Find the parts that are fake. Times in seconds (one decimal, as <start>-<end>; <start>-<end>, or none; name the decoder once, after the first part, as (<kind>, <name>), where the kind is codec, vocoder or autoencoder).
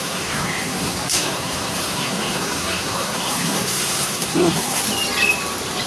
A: 0.0-4.8 (codec, SNAC)